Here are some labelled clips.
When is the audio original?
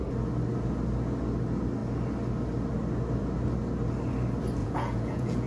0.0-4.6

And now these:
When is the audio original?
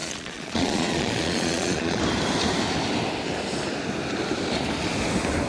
2.0-5.5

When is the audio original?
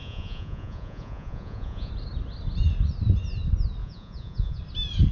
1.9-3.8; 4.6-5.1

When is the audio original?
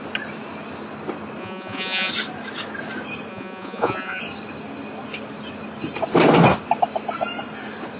0.0-1.4; 2.1-3.3; 4.2-8.0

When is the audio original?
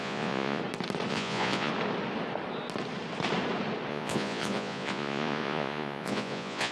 0.6-1.1; 1.7-3.9